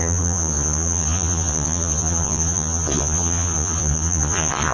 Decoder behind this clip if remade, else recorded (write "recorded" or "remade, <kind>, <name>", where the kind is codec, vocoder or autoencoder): remade, vocoder, Vocos